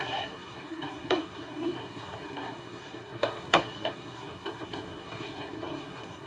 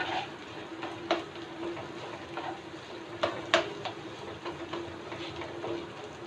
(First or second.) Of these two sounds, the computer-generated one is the first